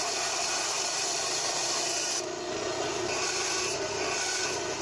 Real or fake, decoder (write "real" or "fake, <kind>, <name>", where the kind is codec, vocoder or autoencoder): real